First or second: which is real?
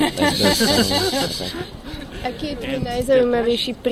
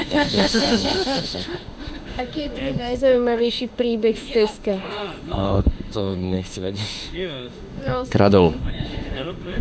first